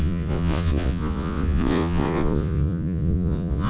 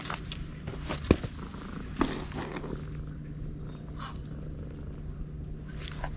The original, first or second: second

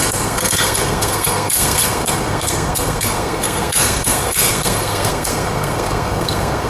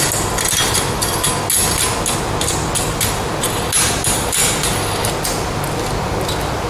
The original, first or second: second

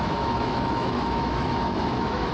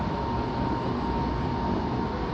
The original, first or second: second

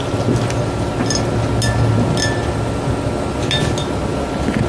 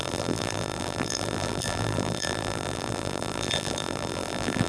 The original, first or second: first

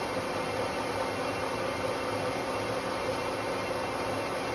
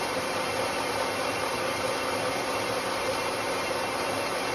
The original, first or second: first